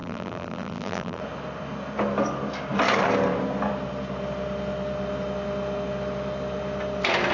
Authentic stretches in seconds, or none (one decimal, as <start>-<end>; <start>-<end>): 1.2-7.3